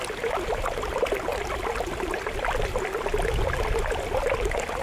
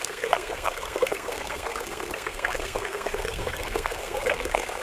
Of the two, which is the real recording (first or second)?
first